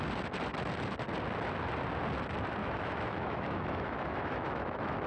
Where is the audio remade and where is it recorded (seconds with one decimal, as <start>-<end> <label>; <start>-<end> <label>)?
0.0-2.6 recorded; 2.6-5.1 remade